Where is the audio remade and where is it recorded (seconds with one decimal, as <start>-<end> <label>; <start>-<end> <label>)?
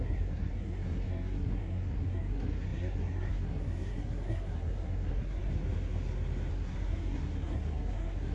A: 0.0-5.5 remade; 5.5-6.5 recorded; 6.5-8.3 remade